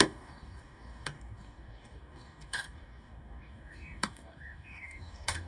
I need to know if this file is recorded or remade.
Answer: remade